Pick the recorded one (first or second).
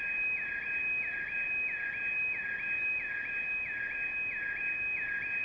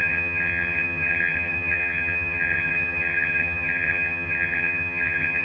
first